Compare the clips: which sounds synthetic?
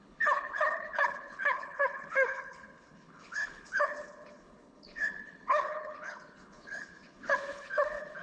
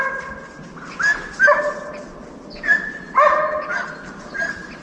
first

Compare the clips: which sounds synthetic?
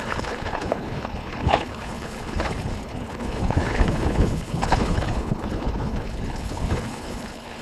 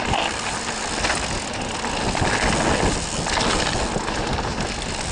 first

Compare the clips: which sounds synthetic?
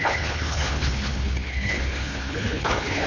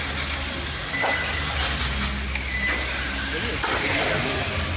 first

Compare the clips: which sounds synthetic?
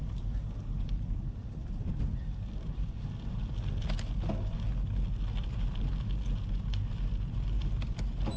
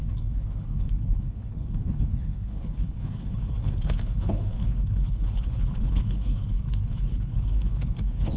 second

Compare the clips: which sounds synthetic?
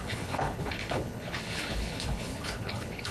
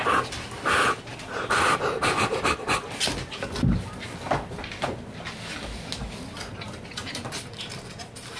first